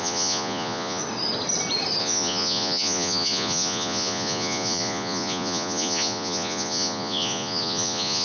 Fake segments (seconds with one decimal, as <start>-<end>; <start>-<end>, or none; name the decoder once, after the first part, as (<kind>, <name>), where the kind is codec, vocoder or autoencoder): 0.0-1.0 (vocoder, Vocos); 2.0-8.2